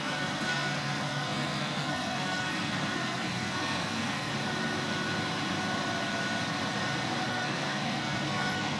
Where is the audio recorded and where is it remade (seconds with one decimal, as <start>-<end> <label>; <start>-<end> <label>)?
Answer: 0.0-4.3 remade; 4.3-7.3 recorded; 7.3-8.8 remade